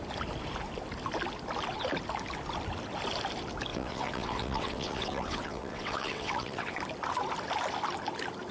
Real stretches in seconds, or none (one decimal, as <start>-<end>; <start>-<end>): 0.0-3.7; 6.8-8.5

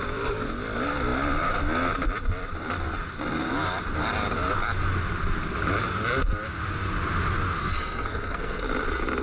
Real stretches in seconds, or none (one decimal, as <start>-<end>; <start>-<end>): 0.0-7.6; 8.6-9.2